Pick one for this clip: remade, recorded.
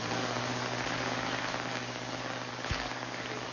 remade